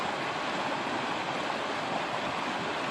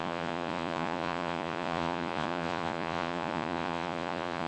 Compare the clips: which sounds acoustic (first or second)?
first